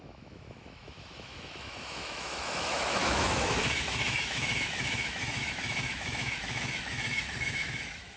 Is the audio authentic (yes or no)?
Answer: no